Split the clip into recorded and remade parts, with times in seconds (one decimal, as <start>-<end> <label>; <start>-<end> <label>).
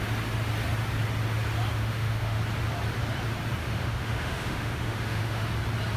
0.0-1.8 recorded; 1.8-2.4 remade; 2.4-3.6 recorded; 3.6-5.5 remade; 5.5-6.0 recorded